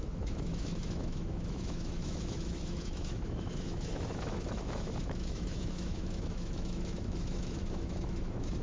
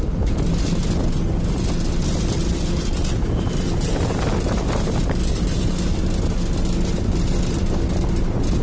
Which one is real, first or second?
second